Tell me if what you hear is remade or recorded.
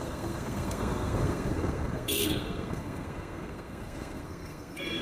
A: remade